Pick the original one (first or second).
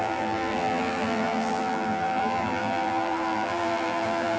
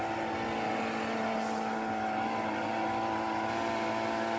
second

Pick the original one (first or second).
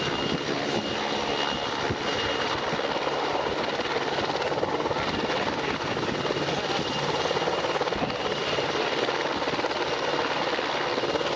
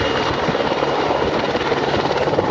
first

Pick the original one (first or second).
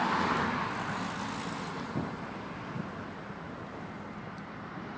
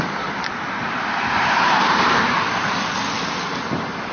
first